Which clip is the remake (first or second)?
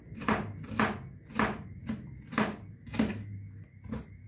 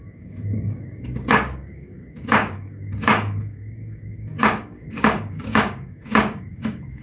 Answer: second